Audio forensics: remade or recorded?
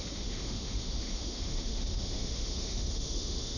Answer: remade